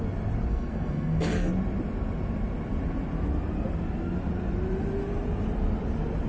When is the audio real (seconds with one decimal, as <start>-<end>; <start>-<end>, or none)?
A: 0.0-0.5; 1.5-6.3